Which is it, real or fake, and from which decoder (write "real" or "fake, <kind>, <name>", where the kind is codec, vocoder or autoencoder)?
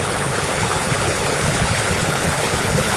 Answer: fake, codec, HILCodec